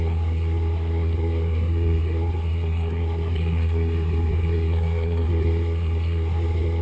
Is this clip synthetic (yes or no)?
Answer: yes